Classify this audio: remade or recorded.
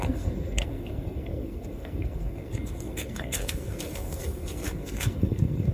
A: remade